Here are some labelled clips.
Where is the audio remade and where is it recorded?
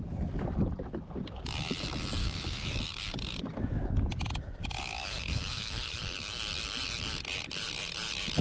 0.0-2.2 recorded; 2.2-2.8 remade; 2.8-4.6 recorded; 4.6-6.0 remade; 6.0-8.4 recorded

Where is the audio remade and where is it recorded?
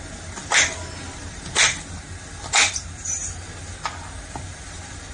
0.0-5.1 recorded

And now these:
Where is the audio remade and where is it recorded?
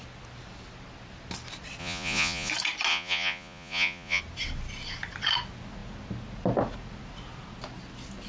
0.0-1.8 recorded; 1.8-2.5 remade; 2.5-2.9 recorded; 2.9-4.2 remade; 4.2-8.3 recorded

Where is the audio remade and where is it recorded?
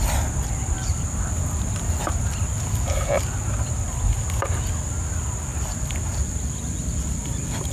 0.0-0.8 recorded; 0.8-1.3 remade; 1.3-5.5 recorded; 5.5-7.7 remade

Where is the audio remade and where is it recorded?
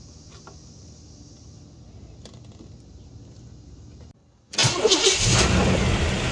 0.0-6.3 recorded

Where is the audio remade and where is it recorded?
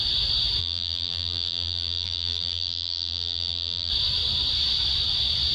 0.0-0.6 recorded; 0.6-3.9 remade; 3.9-5.5 recorded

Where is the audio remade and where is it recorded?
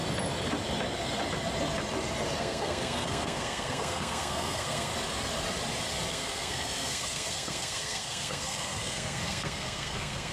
0.0-2.4 recorded; 2.4-4.9 remade; 4.9-6.1 recorded; 6.1-10.3 remade